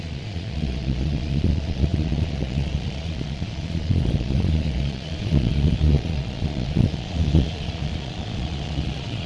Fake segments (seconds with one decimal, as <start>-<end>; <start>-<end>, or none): 0.0-9.3